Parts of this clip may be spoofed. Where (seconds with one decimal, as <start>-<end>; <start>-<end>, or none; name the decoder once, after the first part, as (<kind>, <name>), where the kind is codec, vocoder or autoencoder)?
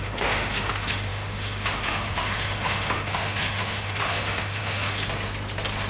0.0-5.0 (autoencoder, DAC-VAE)